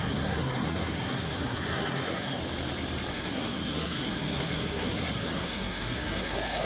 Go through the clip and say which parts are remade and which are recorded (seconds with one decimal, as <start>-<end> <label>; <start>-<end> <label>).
0.0-2.4 remade; 2.4-3.1 recorded; 3.1-6.7 remade